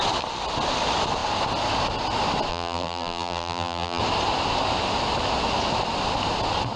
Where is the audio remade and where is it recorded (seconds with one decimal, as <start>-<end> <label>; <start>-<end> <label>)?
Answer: 0.0-2.5 recorded; 2.5-4.0 remade; 4.0-6.8 recorded